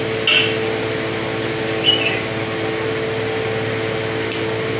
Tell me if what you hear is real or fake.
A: real